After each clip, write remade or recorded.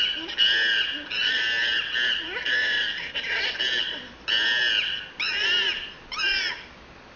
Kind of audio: recorded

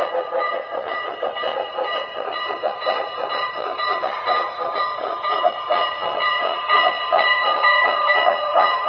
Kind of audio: remade